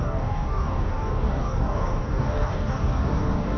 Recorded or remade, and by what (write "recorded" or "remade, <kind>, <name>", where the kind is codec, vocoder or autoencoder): remade, codec, DAC